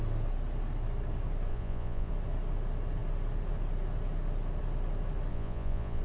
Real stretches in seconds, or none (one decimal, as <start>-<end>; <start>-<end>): 0.0-1.5; 2.1-5.3